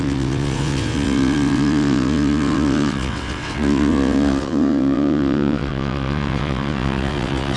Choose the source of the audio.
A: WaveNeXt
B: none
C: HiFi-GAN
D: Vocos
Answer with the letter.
A